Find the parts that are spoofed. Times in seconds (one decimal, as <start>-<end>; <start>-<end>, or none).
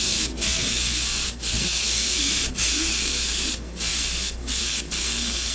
0.0-5.5